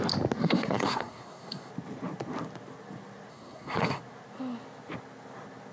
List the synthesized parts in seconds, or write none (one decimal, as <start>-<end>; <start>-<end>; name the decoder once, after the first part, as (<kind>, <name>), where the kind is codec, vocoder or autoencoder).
0.4-1.7 (codec, SNAC); 3.3-4.0